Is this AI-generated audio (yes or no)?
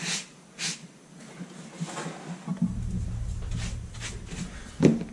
no